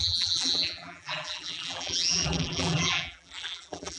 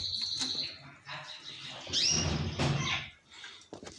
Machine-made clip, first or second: first